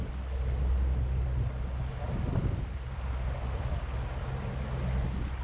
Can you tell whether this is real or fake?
real